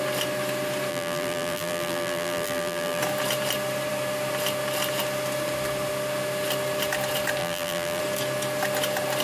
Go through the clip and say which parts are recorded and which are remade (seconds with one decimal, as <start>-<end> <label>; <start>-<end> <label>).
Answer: 0.0-0.9 recorded; 0.9-3.0 remade; 3.0-7.4 recorded; 7.4-8.0 remade; 8.0-9.2 recorded